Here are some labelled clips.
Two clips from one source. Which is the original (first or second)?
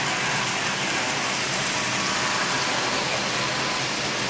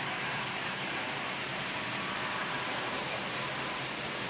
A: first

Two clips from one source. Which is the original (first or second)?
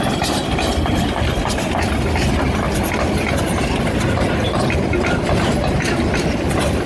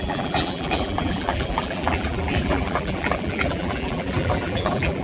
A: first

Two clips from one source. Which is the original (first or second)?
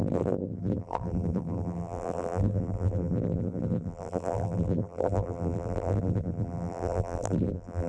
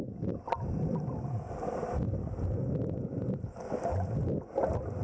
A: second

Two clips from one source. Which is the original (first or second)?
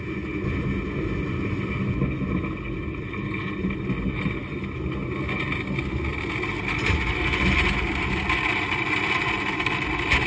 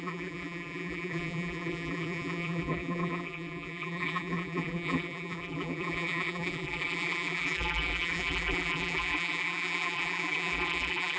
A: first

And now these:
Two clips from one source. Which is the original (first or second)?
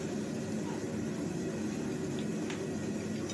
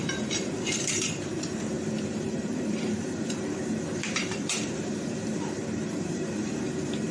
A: first